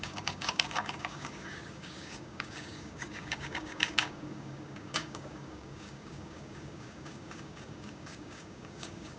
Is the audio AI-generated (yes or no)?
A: yes